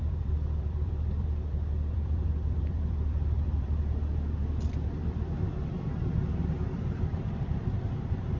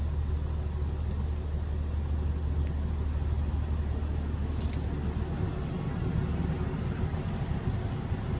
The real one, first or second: second